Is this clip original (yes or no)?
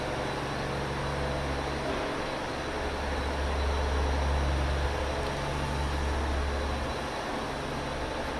yes